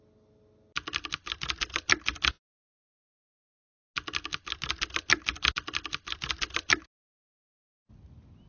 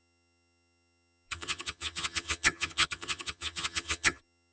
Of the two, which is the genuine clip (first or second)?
first